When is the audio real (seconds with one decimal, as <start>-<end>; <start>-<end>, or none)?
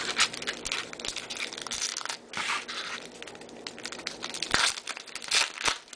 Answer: 0.0-6.0